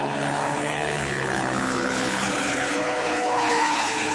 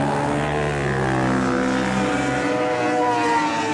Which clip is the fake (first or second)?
first